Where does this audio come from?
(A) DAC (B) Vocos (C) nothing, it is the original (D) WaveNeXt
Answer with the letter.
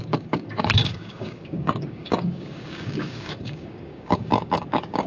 A